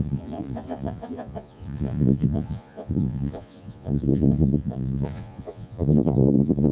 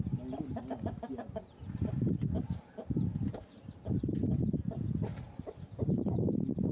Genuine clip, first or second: second